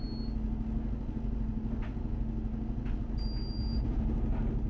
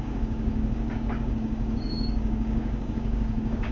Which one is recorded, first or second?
first